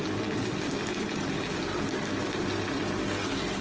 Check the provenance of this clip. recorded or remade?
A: recorded